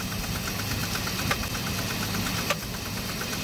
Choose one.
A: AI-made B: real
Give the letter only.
B